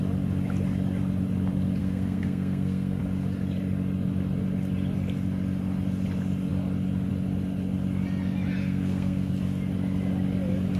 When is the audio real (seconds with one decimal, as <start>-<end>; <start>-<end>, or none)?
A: 0.0-1.8; 3.0-8.6; 9.3-10.8